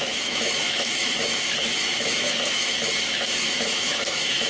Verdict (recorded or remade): remade